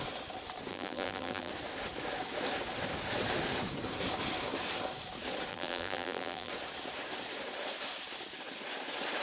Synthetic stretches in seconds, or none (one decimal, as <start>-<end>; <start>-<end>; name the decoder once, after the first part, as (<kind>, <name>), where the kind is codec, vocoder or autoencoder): 0.7-1.5 (vocoder, BigVGAN v2); 5.5-6.5